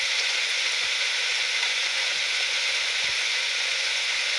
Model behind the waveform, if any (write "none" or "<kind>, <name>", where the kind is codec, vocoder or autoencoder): vocoder, Vocos